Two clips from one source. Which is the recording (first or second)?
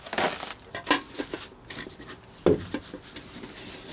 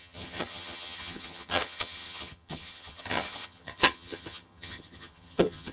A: first